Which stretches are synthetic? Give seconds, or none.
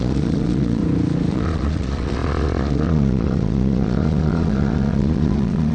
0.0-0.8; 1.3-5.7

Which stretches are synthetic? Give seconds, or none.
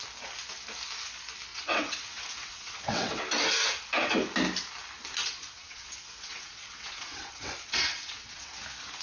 1.5-3.2; 5.2-8.6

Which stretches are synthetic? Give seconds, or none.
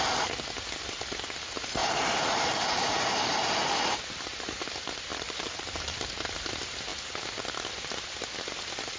1.8-4.6; 5.1-6.5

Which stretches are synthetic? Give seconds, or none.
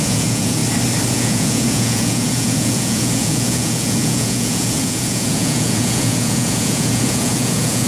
0.0-0.6; 1.1-7.9